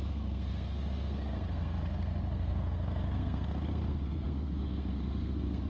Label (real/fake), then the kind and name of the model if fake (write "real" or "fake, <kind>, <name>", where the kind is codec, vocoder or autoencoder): fake, codec, SNAC